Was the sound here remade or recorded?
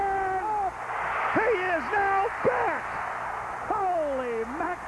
recorded